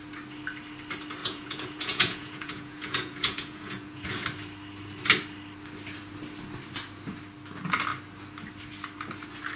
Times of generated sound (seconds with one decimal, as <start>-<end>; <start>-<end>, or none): 1.2-4.1